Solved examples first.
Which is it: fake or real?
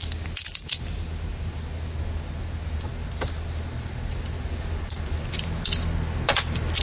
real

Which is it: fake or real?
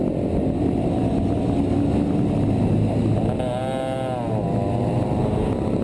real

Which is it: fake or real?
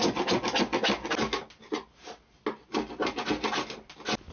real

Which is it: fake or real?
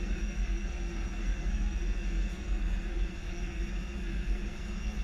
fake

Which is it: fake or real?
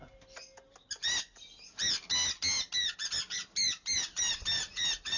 real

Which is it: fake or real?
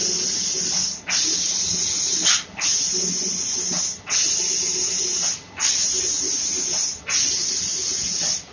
real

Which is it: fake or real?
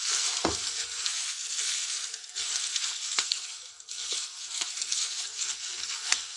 fake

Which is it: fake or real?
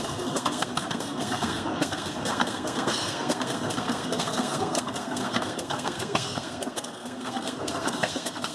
fake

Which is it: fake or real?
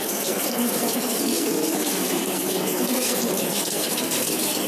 fake